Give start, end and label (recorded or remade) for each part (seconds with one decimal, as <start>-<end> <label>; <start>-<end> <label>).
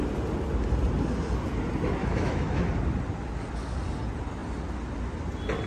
0.0-2.0 recorded; 2.0-2.6 remade; 2.6-5.7 recorded